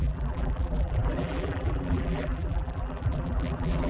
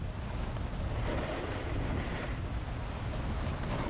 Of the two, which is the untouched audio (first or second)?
second